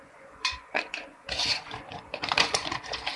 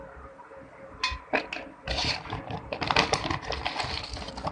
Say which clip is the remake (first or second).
first